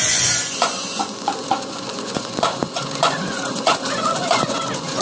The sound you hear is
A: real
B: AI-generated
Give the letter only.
B